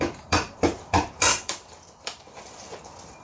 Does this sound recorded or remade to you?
remade